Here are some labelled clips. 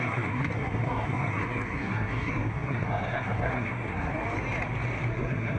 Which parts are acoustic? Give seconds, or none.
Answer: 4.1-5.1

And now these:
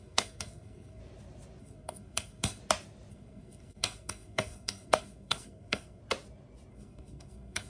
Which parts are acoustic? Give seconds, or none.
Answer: 1.0-1.6; 2.6-3.1; 6.0-6.7